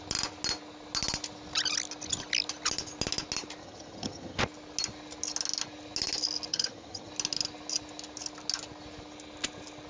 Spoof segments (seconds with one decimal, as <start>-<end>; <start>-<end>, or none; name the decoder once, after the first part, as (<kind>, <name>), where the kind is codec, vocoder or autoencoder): 3.6-4.4 (vocoder, HiFi-GAN); 6.5-7.1